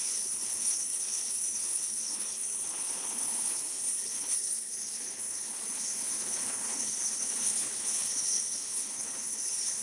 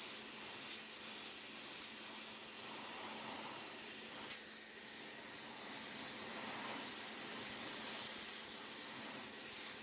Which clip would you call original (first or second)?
second